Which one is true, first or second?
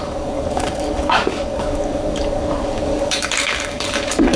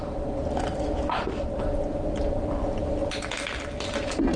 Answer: second